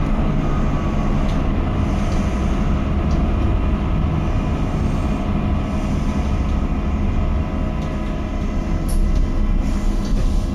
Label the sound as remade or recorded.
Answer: recorded